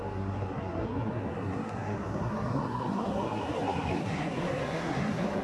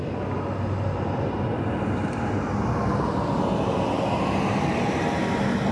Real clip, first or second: second